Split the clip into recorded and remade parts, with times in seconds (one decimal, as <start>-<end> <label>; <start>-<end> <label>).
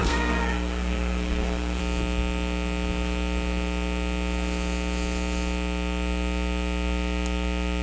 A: 0.0-1.8 remade; 1.8-7.8 recorded